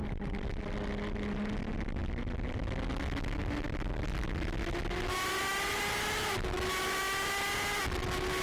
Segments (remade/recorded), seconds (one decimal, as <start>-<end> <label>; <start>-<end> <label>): 0.0-8.4 recorded